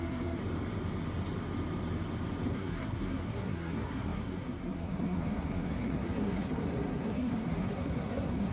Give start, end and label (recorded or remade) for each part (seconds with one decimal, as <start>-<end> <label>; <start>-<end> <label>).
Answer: 0.0-0.4 remade; 0.4-2.5 recorded; 2.5-8.5 remade